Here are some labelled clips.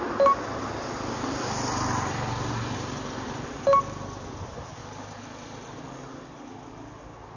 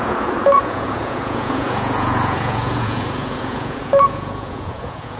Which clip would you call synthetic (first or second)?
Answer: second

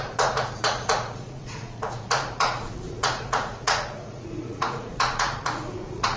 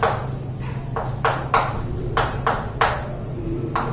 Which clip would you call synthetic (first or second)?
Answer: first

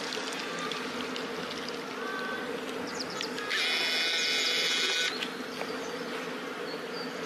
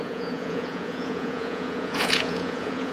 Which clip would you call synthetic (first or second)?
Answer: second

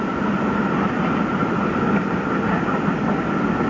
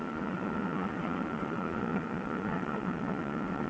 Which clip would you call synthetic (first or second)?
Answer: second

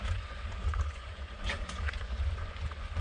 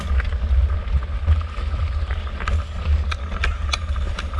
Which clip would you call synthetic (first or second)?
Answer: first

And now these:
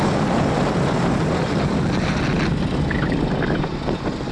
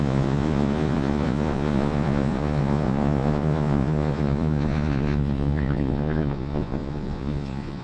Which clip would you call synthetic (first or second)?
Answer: second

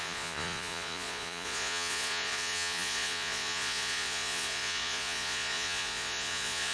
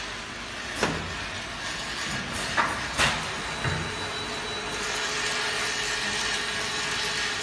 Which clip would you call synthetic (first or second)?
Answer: first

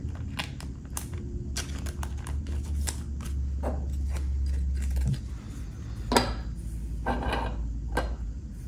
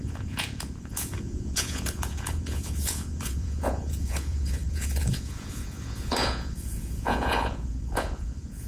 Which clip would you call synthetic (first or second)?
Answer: second